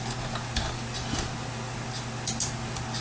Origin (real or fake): real